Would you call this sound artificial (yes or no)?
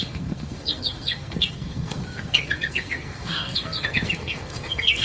yes